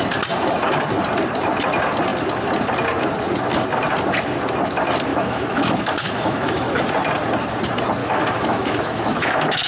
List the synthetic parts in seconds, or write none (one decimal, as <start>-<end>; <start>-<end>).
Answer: 5.1-6.8; 8.0-9.7